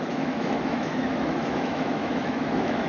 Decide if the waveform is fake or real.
fake